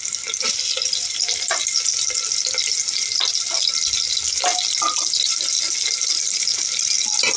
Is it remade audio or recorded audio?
recorded